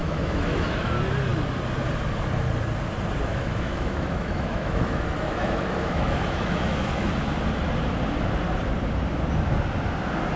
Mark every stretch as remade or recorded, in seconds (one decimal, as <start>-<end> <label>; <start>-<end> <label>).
0.0-0.9 remade; 0.9-3.3 recorded; 3.3-7.1 remade; 7.1-10.4 recorded